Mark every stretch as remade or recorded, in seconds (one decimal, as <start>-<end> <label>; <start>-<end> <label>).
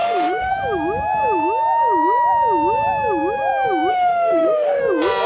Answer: 0.0-0.5 remade; 0.5-3.9 recorded; 3.9-4.8 remade; 4.8-5.3 recorded